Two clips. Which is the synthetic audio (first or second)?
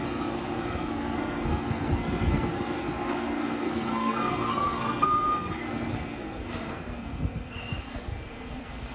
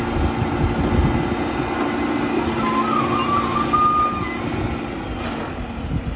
first